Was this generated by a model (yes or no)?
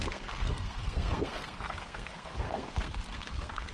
yes